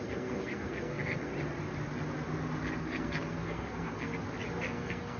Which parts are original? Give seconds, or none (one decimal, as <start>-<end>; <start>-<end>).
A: 1.3-2.8; 4.1-4.6